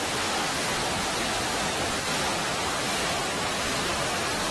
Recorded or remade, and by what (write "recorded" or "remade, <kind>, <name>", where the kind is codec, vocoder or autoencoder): recorded